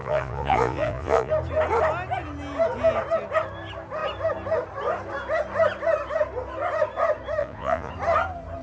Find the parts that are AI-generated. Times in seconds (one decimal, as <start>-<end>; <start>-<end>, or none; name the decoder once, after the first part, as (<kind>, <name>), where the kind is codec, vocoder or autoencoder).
0.0-1.3 (vocoder, Vocos); 7.4-7.9